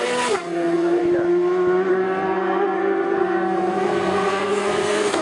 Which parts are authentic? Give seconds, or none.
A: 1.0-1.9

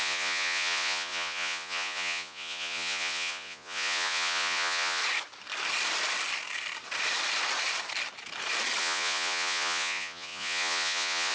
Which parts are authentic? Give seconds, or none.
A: 5.0-8.8

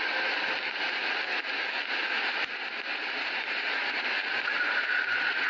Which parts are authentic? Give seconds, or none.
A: 0.0-2.0

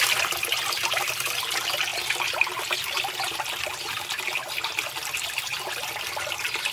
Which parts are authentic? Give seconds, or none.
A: 0.0-6.7